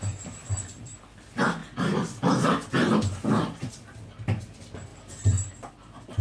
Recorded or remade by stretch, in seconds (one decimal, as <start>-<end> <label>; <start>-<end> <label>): 0.0-1.6 recorded; 1.6-3.6 remade; 3.6-4.9 recorded; 4.9-5.7 remade; 5.7-6.2 recorded